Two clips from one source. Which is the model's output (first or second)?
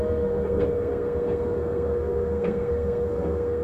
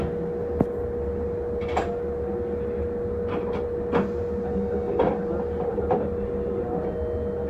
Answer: first